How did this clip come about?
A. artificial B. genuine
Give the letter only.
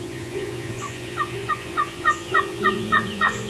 A